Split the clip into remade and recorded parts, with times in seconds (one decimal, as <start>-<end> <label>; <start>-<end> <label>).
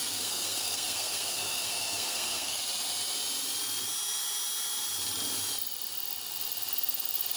0.0-2.6 remade; 2.6-7.4 recorded